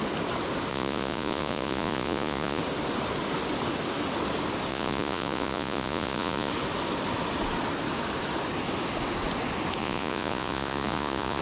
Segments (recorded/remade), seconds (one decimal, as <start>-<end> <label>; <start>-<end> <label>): 0.0-0.7 recorded; 0.7-2.6 remade; 2.6-4.7 recorded; 4.7-6.5 remade; 6.5-9.8 recorded; 9.8-11.4 remade

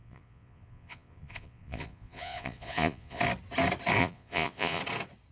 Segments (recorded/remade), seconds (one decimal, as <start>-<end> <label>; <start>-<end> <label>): 0.0-3.2 remade; 3.2-4.0 recorded; 4.0-4.8 remade; 4.8-5.3 recorded

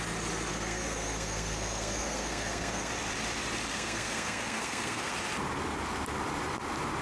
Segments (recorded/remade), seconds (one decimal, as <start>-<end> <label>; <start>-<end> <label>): 0.0-0.5 recorded; 0.5-2.9 remade; 2.9-3.7 recorded; 3.7-5.1 remade; 5.1-7.0 recorded

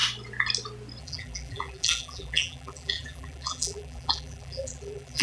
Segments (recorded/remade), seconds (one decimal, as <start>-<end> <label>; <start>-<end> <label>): 0.0-1.0 recorded; 1.0-5.2 remade

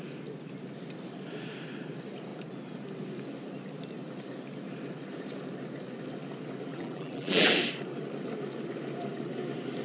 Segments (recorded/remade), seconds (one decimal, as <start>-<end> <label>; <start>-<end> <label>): 0.0-6.7 recorded; 6.7-7.5 remade; 7.5-9.8 recorded

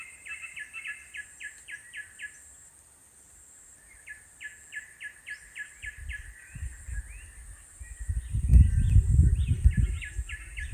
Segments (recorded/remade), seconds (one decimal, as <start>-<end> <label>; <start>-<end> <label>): 0.0-4.5 remade; 4.5-5.2 recorded; 5.2-6.7 remade; 6.7-7.8 recorded; 7.8-10.7 remade

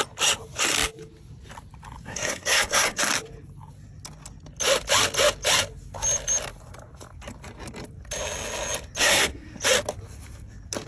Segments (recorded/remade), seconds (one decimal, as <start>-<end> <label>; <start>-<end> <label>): 0.0-2.0 recorded; 2.0-3.0 remade; 3.0-9.0 recorded; 9.0-9.6 remade; 9.6-10.9 recorded